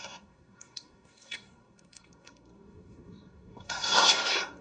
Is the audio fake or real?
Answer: fake